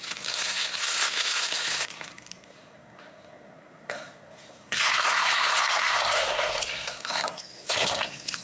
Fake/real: fake